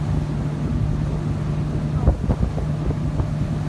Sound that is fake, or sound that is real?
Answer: real